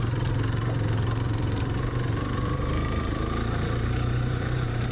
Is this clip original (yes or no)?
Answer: no